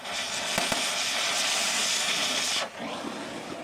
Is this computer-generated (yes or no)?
no